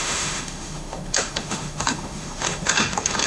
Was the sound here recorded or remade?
remade